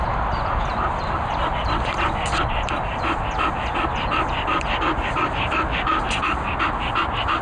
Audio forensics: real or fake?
real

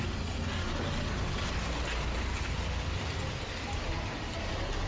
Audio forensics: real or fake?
real